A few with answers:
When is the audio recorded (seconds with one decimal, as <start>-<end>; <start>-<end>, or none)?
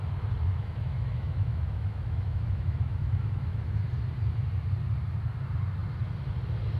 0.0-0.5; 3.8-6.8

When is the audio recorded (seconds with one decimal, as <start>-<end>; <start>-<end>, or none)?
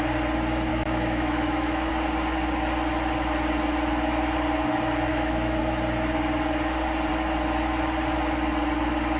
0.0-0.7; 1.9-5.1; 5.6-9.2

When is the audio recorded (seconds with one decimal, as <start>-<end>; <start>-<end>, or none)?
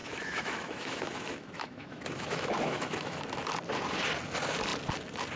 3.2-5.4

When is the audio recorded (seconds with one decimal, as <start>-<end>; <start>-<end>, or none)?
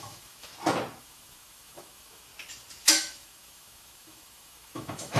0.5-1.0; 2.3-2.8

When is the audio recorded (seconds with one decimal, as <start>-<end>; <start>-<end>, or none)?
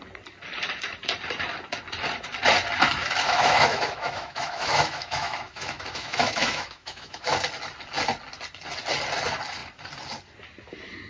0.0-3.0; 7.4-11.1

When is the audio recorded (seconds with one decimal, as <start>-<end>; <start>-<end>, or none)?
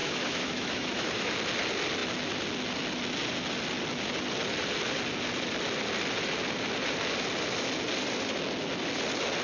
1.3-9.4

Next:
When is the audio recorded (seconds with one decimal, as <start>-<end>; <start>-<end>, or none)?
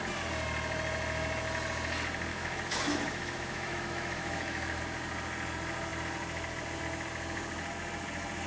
0.0-2.3; 4.8-8.5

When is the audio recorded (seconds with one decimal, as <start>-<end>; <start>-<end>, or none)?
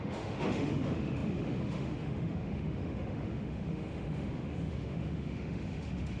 none